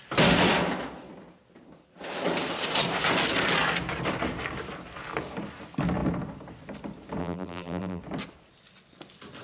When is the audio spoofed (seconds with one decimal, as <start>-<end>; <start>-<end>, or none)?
7.2-8.0